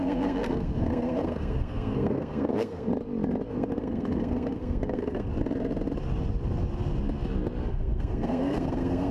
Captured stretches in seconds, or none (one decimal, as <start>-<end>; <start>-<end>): 2.9-3.5; 5.3-7.7

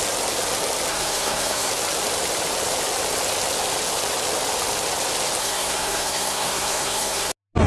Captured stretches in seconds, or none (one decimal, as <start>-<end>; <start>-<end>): 0.0-0.9; 1.7-5.4; 7.3-7.7

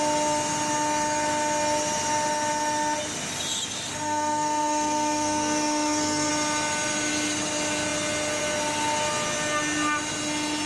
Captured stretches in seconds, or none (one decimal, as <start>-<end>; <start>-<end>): 0.0-3.9; 6.3-10.7